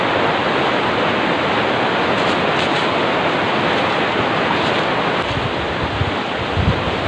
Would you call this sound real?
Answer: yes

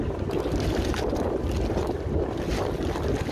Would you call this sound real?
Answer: yes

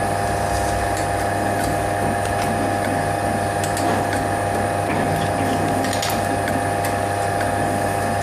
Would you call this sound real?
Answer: yes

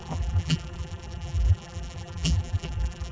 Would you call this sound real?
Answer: no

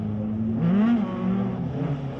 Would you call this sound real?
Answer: yes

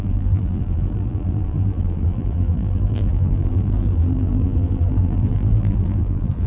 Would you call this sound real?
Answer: no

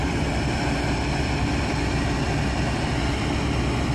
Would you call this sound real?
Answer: yes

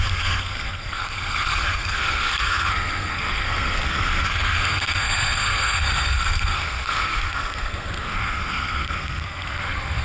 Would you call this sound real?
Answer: no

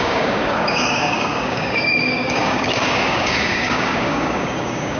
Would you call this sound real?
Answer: no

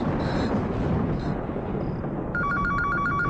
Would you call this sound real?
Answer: yes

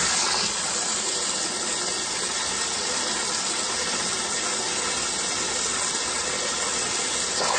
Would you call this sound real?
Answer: yes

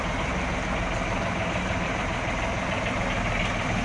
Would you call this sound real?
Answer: yes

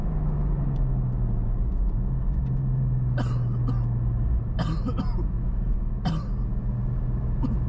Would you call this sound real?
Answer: yes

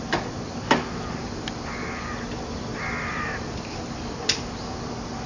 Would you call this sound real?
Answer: yes